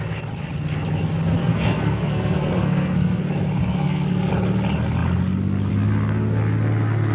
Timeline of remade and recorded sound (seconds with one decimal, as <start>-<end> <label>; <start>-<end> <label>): 0.0-1.4 recorded; 1.4-3.2 remade; 3.2-3.6 recorded; 3.6-4.3 remade; 4.3-7.1 recorded